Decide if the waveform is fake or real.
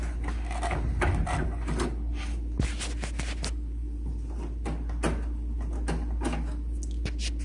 real